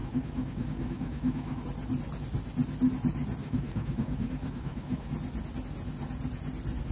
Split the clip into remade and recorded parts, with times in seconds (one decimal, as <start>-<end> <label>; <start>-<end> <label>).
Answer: 0.0-1.6 remade; 1.6-3.4 recorded; 3.4-5.1 remade; 5.1-6.9 recorded